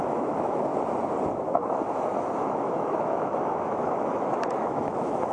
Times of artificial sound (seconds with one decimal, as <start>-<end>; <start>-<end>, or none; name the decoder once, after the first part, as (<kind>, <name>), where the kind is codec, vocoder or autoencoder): 0.0-0.7 (autoencoder, DAC-VAE); 1.3-5.3